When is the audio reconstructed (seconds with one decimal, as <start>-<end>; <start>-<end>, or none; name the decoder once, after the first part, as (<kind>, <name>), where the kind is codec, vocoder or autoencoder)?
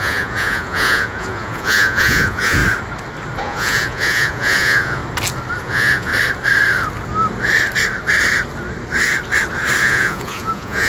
0.0-2.6 (vocoder, Vocos); 3.4-5.0; 5.6-6.1; 9.8-10.9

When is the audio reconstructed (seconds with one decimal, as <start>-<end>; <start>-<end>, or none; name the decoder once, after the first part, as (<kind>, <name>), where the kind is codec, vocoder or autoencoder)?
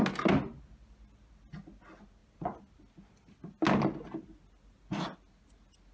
none